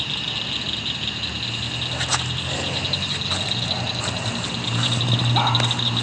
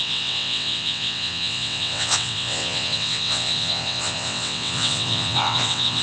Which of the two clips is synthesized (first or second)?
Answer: second